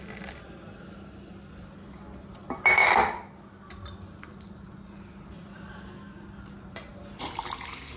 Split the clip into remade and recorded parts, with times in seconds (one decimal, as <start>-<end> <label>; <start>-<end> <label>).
0.0-8.0 recorded